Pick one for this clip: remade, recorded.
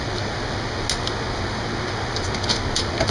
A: recorded